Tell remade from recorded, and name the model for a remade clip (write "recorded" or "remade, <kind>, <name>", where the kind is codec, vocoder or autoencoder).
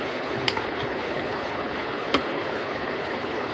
remade, codec, HILCodec